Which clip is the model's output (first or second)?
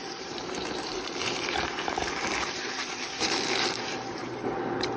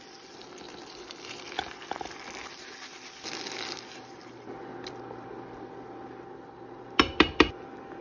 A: first